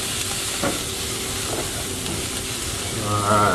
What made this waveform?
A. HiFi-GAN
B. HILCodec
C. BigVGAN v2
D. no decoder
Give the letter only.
D